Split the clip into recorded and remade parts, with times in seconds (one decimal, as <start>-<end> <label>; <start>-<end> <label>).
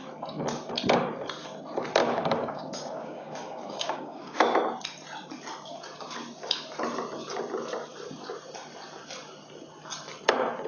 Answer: 0.0-2.0 recorded; 2.0-4.4 remade; 4.4-10.7 recorded